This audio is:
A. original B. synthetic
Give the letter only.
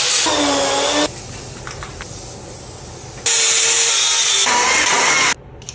A